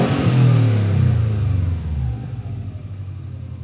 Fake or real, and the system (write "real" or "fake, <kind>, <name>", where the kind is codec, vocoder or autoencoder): real